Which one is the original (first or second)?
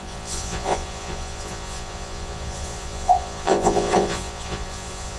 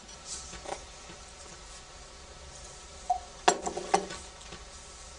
second